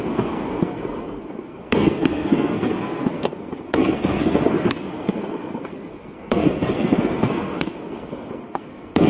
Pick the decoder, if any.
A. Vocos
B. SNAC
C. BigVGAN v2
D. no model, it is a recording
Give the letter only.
B